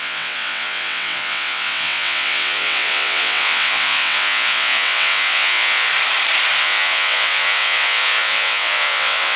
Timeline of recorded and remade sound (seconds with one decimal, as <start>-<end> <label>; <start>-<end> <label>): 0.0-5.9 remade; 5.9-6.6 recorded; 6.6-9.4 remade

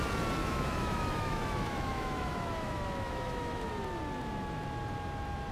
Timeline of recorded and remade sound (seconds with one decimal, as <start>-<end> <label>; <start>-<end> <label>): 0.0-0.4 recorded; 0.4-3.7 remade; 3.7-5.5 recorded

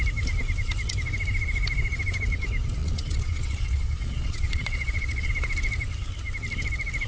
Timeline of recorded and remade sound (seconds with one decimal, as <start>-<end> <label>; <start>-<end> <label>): 0.0-2.8 recorded; 2.8-5.3 remade; 5.3-7.1 recorded